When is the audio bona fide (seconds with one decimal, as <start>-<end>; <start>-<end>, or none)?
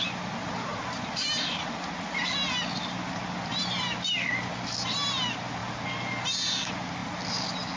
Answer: 0.0-7.8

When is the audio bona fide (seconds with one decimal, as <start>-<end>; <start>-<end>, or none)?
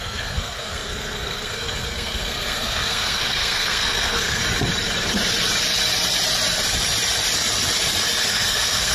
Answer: 4.4-8.3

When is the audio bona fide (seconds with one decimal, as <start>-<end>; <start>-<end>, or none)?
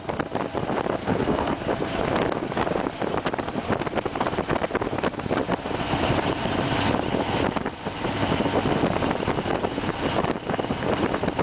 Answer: 0.0-1.0; 1.6-11.4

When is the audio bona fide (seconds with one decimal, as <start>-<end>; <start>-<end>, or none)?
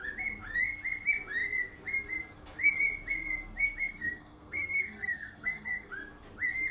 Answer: 0.0-3.8; 5.9-6.7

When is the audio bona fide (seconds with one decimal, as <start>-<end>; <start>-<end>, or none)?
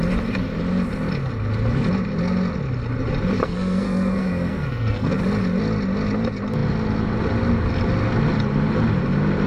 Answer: 0.0-3.4; 5.2-9.5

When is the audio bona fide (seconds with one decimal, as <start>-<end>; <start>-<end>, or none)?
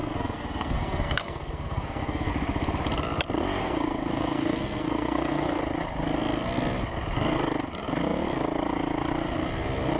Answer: 2.3-3.6; 5.6-10.0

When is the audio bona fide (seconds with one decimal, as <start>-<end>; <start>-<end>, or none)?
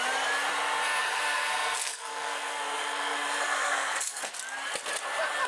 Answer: 0.0-1.0; 4.3-5.5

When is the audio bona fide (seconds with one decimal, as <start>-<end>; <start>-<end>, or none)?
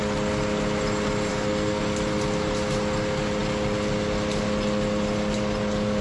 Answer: 0.0-1.3; 1.8-6.0